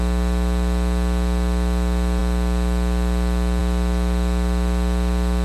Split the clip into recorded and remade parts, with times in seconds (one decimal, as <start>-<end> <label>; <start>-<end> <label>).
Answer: 0.0-5.4 recorded